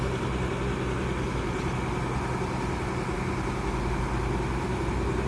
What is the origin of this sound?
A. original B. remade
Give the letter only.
A